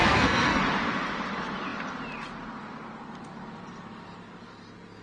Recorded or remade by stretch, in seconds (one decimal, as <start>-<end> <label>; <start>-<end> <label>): 0.0-0.6 remade; 0.6-5.0 recorded